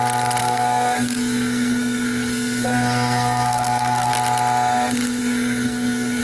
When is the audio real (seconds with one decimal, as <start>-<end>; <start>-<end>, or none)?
0.0-0.4; 4.1-5.2